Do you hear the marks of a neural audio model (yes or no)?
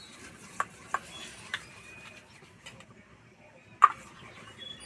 yes